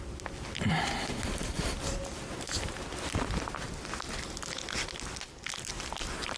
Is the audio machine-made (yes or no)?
no